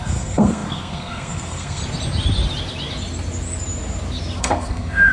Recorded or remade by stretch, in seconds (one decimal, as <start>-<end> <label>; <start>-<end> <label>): 0.0-1.8 remade; 1.8-4.4 recorded; 4.4-5.1 remade